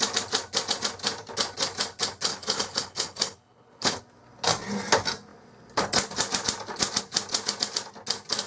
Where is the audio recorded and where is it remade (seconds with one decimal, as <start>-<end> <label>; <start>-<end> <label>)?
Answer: 0.0-2.3 recorded; 2.3-4.0 remade; 4.0-8.5 recorded